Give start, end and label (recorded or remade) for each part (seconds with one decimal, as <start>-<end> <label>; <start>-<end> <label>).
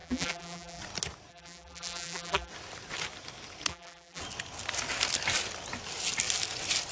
0.0-0.8 remade; 0.8-1.3 recorded; 1.3-2.5 remade; 2.5-3.7 recorded; 3.7-4.2 remade; 4.2-6.9 recorded